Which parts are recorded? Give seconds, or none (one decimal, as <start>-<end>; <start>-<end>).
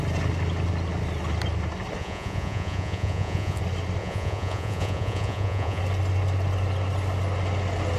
0.0-2.0; 3.6-4.0; 5.8-8.0